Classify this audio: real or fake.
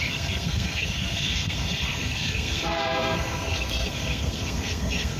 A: fake